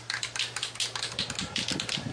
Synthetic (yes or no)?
no